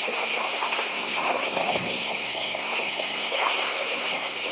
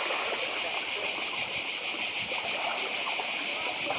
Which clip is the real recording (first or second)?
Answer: second